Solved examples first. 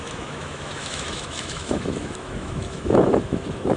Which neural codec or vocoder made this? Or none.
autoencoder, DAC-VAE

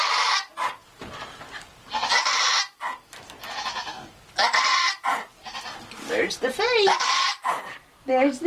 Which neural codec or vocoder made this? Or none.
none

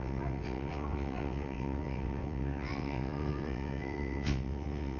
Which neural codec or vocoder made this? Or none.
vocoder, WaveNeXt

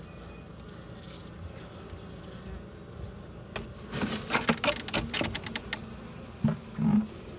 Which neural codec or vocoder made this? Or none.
none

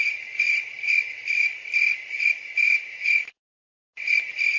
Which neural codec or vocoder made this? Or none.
none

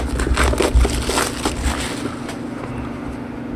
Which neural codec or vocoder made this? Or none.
none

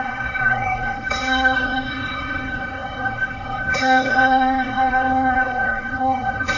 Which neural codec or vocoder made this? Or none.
codec, SNAC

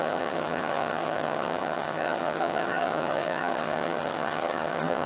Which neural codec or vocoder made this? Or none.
vocoder, HiFi-GAN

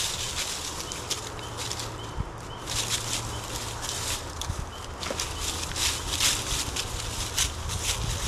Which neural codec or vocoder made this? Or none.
none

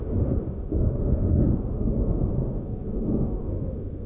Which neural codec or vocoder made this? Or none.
autoencoder, DAC-VAE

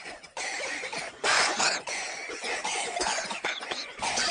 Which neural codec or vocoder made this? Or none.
vocoder, Vocos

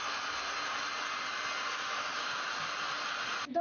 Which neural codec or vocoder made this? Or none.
none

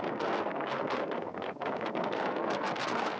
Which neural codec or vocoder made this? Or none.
codec, SNAC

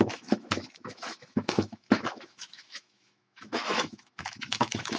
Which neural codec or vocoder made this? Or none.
autoencoder, DAC-VAE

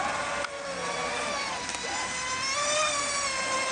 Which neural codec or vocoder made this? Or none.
none